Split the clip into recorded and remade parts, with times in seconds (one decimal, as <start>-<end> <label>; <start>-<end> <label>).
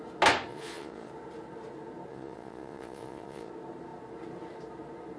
0.0-0.5 recorded; 0.5-1.1 remade; 1.1-2.1 recorded; 2.1-3.5 remade; 3.5-5.2 recorded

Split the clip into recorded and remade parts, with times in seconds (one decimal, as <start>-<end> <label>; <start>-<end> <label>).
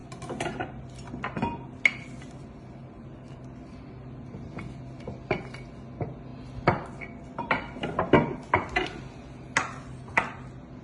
0.0-10.8 recorded